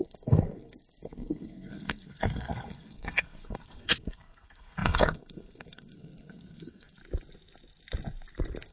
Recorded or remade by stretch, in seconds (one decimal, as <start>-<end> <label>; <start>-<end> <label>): 0.0-7.0 remade; 7.0-8.7 recorded